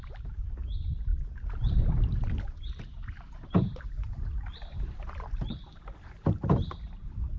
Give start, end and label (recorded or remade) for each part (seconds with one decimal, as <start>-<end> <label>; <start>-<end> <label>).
0.0-1.1 remade; 1.1-3.8 recorded; 3.8-5.7 remade; 5.7-6.2 recorded; 6.2-7.4 remade